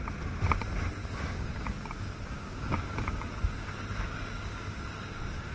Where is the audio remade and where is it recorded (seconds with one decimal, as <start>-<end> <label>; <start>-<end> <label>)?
0.0-1.0 recorded; 1.0-3.3 remade; 3.3-3.9 recorded; 3.9-5.5 remade